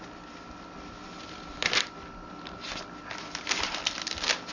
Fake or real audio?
real